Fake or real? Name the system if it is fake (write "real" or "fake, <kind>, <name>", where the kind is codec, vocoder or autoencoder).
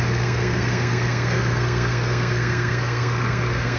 fake, codec, SNAC